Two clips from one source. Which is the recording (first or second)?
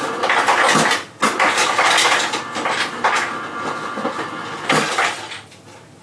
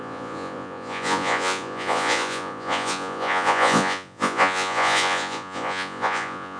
first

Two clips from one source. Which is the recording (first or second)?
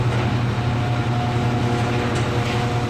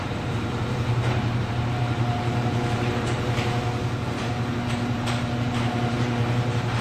first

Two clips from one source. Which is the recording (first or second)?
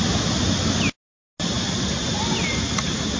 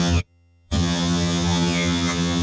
first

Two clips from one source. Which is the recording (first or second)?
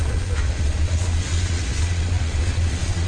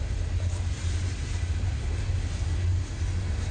second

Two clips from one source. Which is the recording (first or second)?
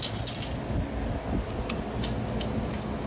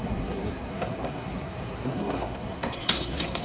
first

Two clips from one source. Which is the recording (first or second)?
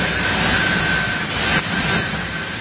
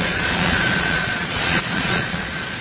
first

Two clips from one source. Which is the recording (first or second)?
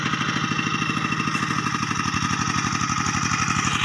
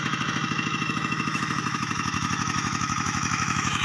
first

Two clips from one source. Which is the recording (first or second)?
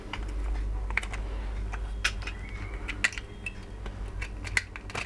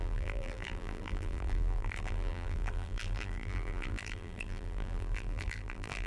first